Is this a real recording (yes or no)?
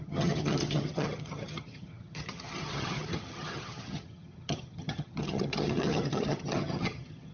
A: no